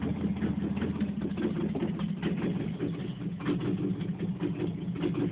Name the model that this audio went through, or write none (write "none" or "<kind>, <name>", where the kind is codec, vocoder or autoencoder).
none